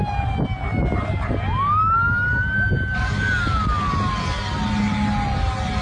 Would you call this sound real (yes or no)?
yes